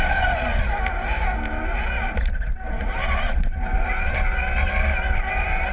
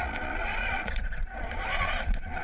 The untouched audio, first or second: first